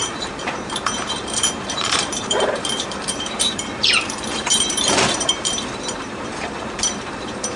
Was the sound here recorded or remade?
remade